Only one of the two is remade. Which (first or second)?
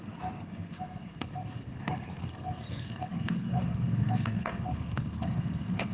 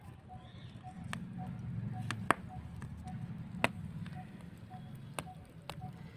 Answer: first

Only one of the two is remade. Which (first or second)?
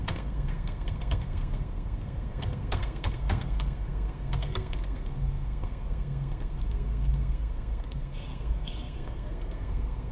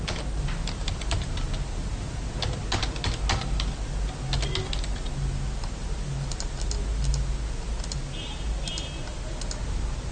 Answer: first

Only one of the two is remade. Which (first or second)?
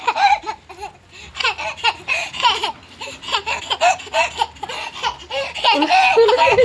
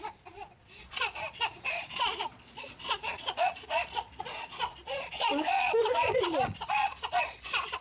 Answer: second